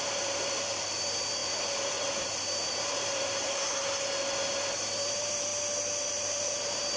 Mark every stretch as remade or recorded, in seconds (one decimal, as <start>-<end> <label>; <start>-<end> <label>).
0.0-3.8 remade; 3.8-4.6 recorded; 4.6-5.5 remade; 5.5-6.1 recorded; 6.1-7.0 remade